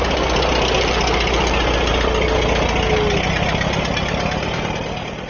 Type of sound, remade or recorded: recorded